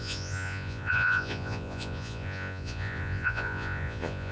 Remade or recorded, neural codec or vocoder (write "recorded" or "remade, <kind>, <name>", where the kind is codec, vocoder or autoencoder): remade, vocoder, Vocos